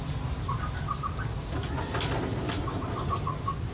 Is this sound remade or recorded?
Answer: recorded